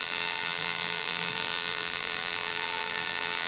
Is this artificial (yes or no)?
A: yes